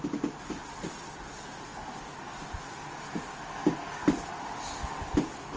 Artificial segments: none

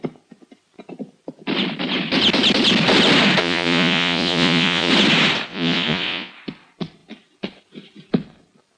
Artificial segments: 3.4-4.9 (vocoder, Vocos); 5.5-6.3

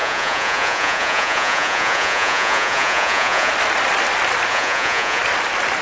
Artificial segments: 0.0-3.5 (vocoder, Vocos); 4.5-5.2

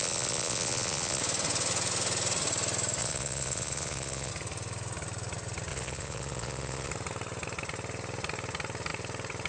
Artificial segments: 0.0-1.2 (vocoder, Vocos); 3.0-4.3; 5.7-6.9

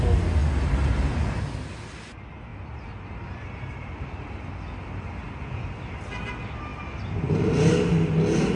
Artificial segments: none